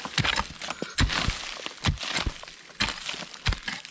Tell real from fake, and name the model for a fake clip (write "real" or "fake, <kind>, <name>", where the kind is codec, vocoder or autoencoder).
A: real